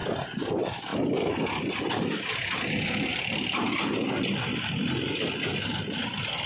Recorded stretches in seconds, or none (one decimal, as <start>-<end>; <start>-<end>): 0.0-6.5